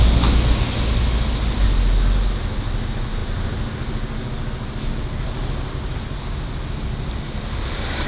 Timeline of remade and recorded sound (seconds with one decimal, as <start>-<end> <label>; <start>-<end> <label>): 0.0-8.1 recorded